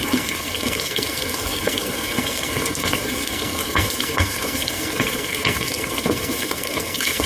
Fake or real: fake